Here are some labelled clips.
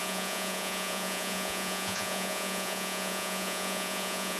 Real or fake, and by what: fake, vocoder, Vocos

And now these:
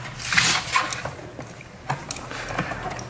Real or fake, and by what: real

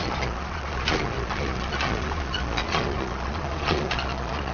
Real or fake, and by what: fake, vocoder, Vocos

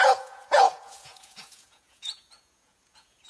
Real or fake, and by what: fake, vocoder, Vocos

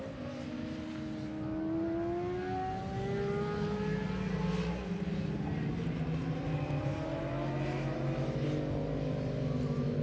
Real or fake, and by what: real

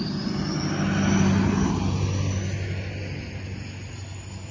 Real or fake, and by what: real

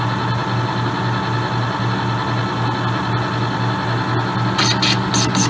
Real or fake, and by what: real